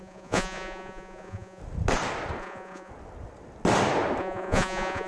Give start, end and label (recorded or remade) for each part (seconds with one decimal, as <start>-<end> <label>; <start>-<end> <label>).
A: 0.0-1.6 remade; 1.6-2.4 recorded; 2.4-2.9 remade; 2.9-4.2 recorded; 4.2-5.1 remade